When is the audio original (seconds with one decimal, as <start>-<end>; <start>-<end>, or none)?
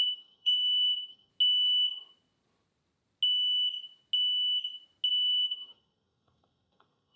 1.3-5.1